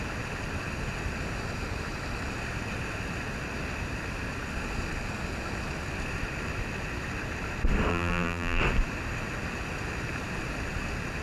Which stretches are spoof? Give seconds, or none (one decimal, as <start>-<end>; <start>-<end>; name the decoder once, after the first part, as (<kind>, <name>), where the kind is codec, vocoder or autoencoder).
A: 7.9-8.6 (vocoder, BigVGAN v2)